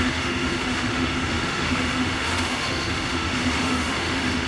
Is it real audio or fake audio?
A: fake